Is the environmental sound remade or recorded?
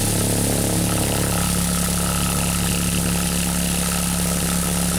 recorded